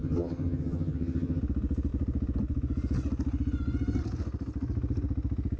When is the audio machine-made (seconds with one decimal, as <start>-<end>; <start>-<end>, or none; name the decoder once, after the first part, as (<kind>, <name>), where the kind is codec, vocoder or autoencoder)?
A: 0.0-1.4 (vocoder, HiFi-GAN)